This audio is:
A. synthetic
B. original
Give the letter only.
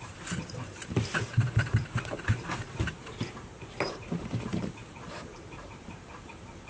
A